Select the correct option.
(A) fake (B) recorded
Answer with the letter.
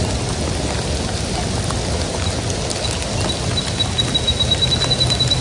B